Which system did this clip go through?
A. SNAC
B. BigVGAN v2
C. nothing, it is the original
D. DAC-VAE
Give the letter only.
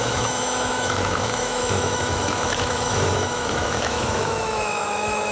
D